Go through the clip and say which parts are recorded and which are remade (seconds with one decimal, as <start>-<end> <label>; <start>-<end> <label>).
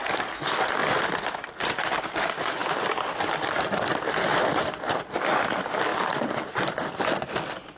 0.0-5.9 remade; 5.9-6.5 recorded; 6.5-7.8 remade